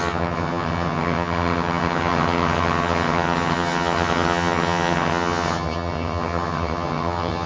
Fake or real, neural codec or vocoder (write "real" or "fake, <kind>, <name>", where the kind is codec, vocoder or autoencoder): fake, vocoder, HiFi-GAN